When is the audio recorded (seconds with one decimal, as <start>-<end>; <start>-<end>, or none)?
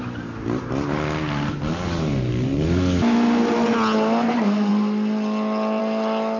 0.0-6.4